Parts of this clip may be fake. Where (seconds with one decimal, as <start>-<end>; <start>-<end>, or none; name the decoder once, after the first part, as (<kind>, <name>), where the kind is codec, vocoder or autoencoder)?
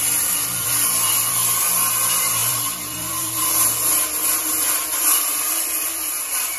0.0-6.6 (vocoder, BigVGAN v2)